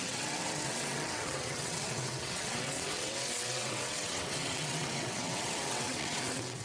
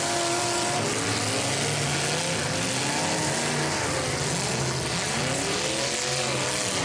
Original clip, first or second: second